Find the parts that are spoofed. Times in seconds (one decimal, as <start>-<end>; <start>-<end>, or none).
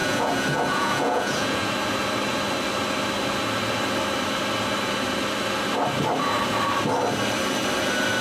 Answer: 0.0-1.7